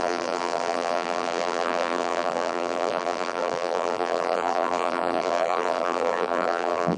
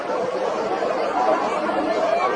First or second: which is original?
second